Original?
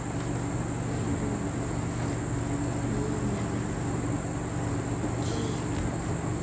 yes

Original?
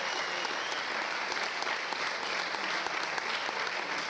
yes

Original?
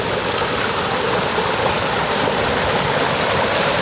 yes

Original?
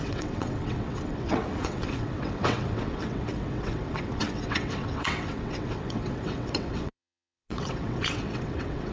no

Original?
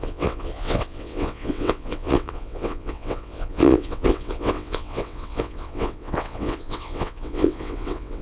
no